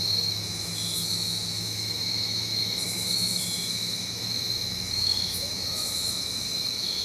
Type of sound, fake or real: fake